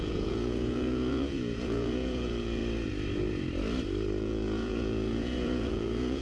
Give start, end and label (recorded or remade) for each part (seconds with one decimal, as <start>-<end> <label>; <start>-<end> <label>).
0.0-2.6 remade; 2.6-4.2 recorded; 4.2-6.2 remade